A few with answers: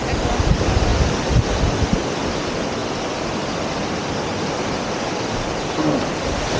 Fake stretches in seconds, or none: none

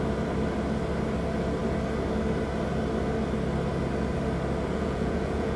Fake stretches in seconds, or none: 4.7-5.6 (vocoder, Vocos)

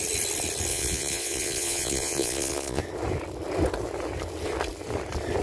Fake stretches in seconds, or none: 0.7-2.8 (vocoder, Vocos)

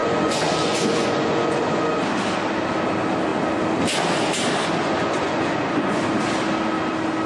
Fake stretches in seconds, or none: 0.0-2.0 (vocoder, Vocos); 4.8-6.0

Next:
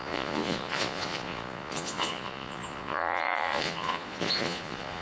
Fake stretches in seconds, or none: 0.0-5.0 (vocoder, Vocos)

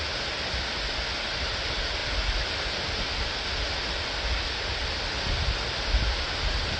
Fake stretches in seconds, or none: none

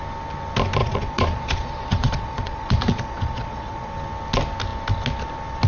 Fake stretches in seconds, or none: 0.8-3.9 (vocoder, Vocos)

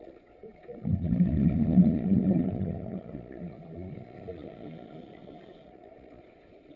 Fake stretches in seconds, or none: 0.0-6.8 (vocoder, Vocos)